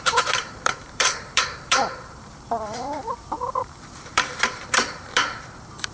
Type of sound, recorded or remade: remade